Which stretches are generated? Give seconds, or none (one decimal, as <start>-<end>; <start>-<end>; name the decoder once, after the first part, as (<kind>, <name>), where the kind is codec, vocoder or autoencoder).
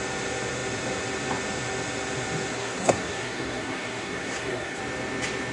2.5-4.8 (codec, SNAC)